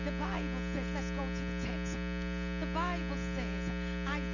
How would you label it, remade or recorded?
recorded